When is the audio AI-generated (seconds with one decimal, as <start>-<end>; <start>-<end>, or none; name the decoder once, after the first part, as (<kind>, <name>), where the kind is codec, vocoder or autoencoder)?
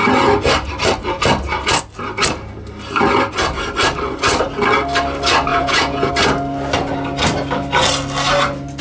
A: 5.5-6.1 (vocoder, Vocos)